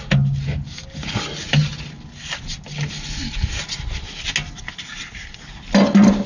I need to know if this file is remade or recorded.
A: recorded